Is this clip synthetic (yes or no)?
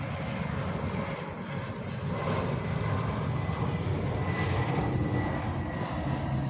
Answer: no